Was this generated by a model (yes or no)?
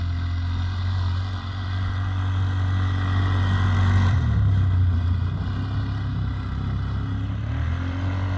no